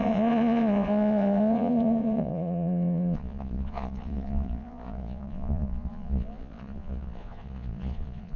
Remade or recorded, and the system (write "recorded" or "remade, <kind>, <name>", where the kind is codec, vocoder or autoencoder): remade, vocoder, Vocos